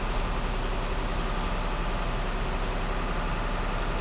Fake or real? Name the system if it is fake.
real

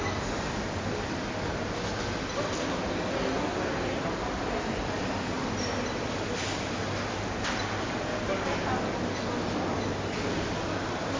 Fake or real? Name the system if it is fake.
real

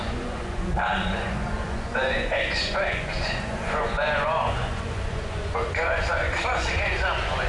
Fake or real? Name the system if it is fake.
fake, vocoder, Vocos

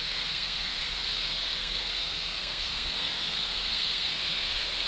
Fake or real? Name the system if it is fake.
fake, codec, SNAC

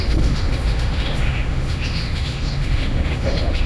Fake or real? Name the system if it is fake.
fake, autoencoder, DAC-VAE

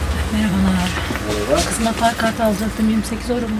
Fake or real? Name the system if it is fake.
real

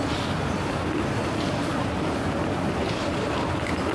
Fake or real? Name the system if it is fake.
fake, vocoder, BigVGAN v2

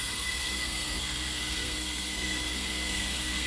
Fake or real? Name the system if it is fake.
fake, codec, SNAC